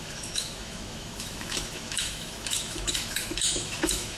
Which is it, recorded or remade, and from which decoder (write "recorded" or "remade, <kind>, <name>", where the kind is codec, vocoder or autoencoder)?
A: remade, autoencoder, DAC-VAE